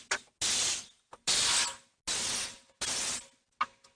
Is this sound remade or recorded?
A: recorded